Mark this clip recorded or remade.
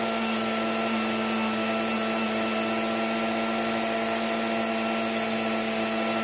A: recorded